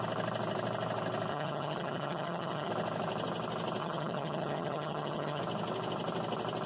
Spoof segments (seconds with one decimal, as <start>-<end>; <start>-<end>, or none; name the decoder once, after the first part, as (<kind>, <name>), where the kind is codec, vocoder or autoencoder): 1.3-2.7 (vocoder, HiFi-GAN); 3.8-5.4